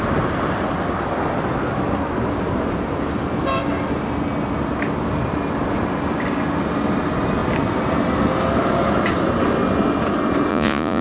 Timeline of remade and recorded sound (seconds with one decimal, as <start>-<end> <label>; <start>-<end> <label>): 0.0-10.5 recorded; 10.5-11.0 remade